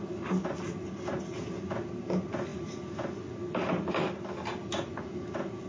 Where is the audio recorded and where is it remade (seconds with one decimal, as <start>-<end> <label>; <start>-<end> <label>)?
0.0-5.7 recorded